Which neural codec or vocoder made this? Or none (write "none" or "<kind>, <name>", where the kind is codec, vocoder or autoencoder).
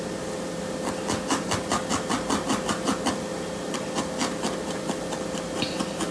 none